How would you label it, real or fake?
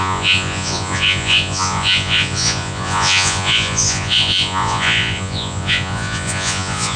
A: fake